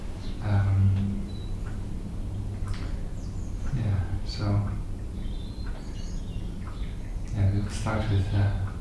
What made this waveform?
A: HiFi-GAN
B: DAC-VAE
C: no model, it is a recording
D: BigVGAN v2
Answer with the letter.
C